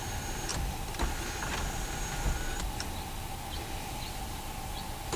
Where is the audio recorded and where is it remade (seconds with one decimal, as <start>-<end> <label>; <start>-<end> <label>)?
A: 0.0-5.2 recorded